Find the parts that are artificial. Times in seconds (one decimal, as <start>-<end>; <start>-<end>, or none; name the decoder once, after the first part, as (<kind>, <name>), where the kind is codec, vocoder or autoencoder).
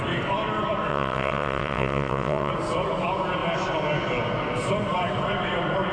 0.9-2.5 (vocoder, WaveNeXt)